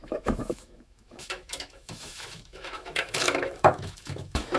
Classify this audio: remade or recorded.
remade